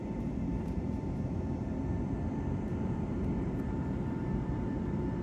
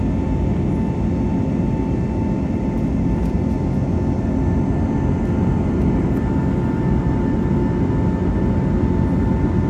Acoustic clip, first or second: second